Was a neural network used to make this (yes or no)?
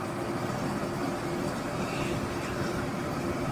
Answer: no